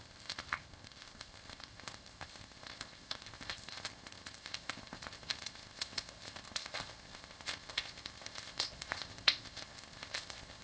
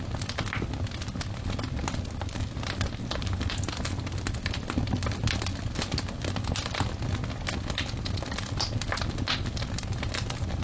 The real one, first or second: second